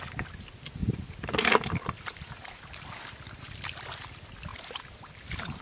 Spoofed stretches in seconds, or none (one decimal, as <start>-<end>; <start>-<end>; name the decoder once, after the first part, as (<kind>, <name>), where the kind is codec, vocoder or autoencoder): 0.8-3.4 (vocoder, BigVGAN v2); 4.5-5.6